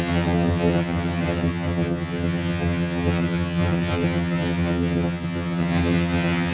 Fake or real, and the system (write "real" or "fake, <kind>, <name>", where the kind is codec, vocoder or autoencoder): fake, vocoder, HiFi-GAN